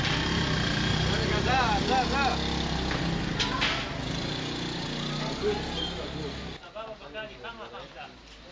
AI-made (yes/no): no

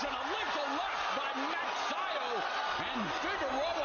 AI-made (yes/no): no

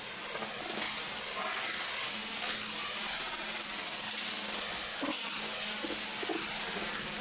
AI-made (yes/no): no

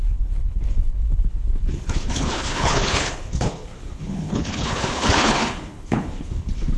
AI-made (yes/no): yes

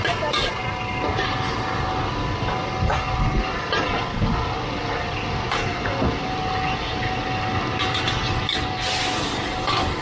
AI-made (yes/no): no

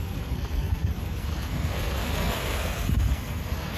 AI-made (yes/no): yes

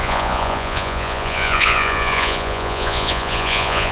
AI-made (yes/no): yes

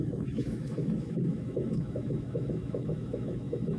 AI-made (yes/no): yes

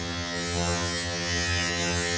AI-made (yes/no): yes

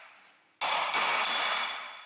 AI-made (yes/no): no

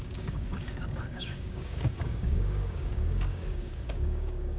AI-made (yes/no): yes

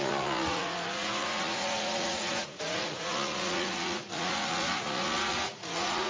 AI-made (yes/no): yes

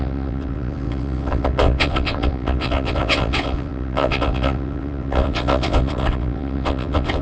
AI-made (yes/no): yes